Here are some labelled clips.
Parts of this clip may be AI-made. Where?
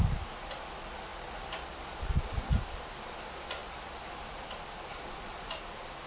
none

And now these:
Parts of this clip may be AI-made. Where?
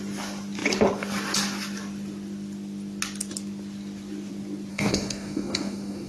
4.7-6.1 (codec, DAC)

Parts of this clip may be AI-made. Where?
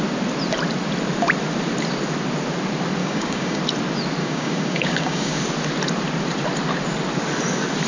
3.0-3.6 (codec, DAC); 4.2-5.4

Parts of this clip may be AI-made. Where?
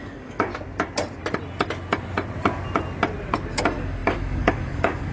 0.0-0.5 (codec, DAC); 3.6-5.1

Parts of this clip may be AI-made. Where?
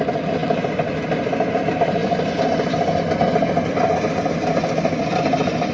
none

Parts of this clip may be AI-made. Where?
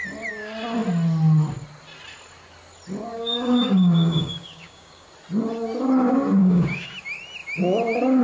3.1-5.1 (codec, DAC); 6.4-6.9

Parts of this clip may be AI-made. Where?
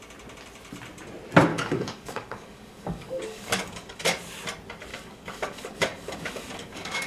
1.5-4.0 (codec, DAC); 4.9-7.1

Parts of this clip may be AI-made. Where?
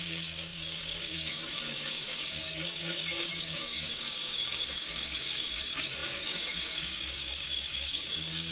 0.0-8.5 (codec, DAC)